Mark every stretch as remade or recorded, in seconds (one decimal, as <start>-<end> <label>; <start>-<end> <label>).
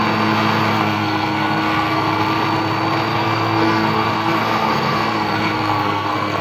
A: 0.0-0.7 recorded; 0.7-2.2 remade; 2.2-3.1 recorded; 3.1-6.4 remade